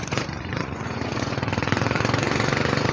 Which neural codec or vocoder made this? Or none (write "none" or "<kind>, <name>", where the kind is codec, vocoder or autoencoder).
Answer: vocoder, Vocos